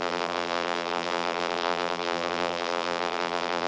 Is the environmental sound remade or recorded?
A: remade